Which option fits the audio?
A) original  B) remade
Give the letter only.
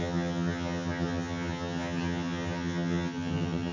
B